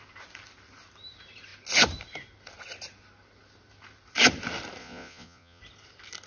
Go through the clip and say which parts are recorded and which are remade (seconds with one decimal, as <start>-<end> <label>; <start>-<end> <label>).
0.0-4.8 recorded; 4.8-5.6 remade; 5.6-6.3 recorded